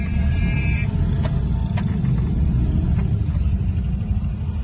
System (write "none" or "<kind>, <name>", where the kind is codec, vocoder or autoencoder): none